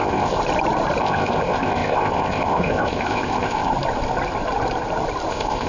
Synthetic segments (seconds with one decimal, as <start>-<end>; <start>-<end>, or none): 0.0-0.4; 1.0-3.7; 5.3-5.7